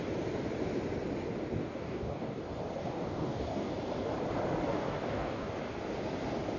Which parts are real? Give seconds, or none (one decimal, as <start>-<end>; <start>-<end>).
0.0-1.6; 2.4-2.8; 3.7-4.7; 5.5-6.6